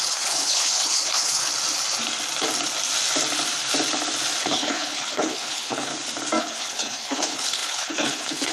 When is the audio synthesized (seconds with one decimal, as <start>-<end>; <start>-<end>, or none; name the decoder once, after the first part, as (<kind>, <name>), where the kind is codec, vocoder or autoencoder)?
0.0-1.5 (codec, HILCodec); 4.4-5.9; 6.4-8.5